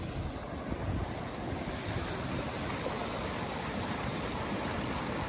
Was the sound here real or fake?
real